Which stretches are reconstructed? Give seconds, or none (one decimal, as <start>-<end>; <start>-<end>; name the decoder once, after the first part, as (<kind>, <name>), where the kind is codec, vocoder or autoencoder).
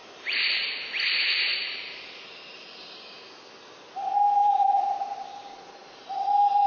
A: 0.0-0.7 (vocoder, BigVGAN v2); 1.5-3.3; 4.4-5.6